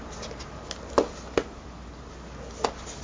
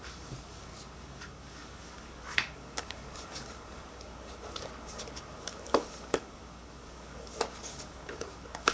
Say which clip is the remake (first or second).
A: second